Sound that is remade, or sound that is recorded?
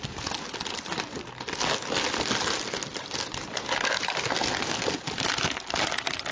recorded